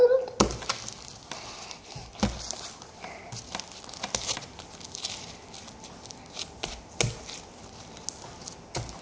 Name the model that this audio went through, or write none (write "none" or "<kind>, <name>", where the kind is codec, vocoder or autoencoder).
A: none